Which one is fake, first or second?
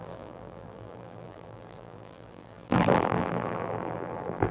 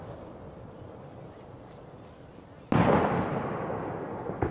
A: first